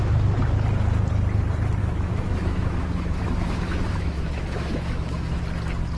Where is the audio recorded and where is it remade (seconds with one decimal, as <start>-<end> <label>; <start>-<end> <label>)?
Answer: 0.0-1.8 recorded; 1.8-5.4 remade; 5.4-6.0 recorded